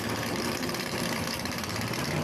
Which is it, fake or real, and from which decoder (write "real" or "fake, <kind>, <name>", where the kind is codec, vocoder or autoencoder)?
fake, vocoder, BigVGAN v2